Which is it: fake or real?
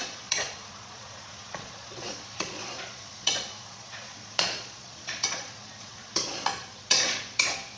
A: fake